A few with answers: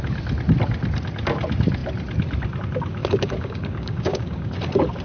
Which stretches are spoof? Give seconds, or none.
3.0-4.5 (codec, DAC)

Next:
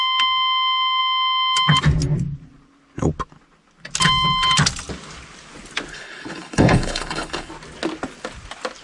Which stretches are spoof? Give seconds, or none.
5.9-7.5 (codec, HILCodec)

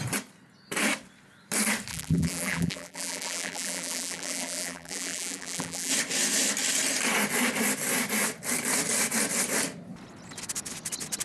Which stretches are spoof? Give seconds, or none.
1.9-5.9 (vocoder, BigVGAN v2)

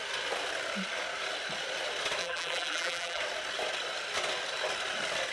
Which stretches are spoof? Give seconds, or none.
2.2-3.2 (vocoder, BigVGAN v2)

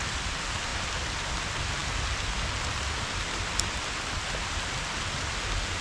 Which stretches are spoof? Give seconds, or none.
none

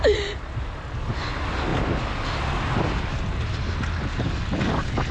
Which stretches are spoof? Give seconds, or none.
none